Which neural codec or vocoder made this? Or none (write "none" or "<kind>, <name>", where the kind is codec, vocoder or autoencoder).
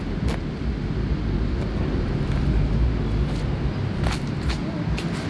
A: none